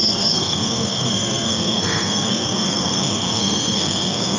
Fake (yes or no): yes